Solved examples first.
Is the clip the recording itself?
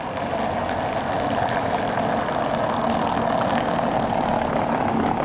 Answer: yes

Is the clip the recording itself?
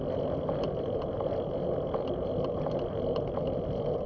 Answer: yes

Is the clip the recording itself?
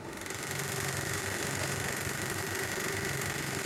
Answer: no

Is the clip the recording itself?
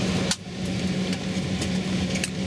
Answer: yes